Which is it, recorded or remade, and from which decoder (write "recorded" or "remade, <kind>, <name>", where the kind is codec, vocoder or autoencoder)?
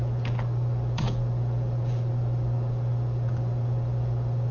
remade, vocoder, BigVGAN v2